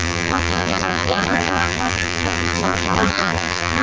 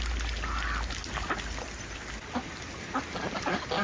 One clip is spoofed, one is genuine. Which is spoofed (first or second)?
first